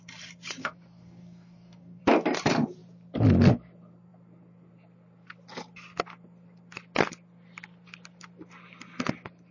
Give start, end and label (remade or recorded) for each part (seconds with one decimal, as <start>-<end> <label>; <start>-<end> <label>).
0.0-0.6 recorded; 0.6-2.0 remade; 2.0-9.5 recorded